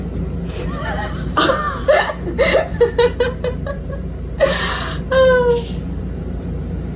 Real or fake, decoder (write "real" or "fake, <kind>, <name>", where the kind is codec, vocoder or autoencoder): real